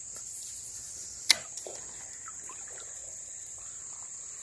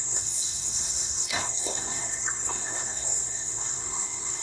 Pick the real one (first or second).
first